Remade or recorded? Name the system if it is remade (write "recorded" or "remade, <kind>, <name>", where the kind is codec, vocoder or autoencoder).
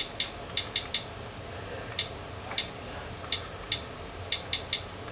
recorded